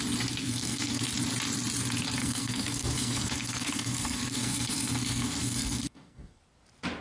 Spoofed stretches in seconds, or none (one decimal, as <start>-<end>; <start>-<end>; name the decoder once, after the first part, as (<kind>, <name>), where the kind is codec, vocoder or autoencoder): 0.4-1.0 (codec, SNAC); 2.2-6.4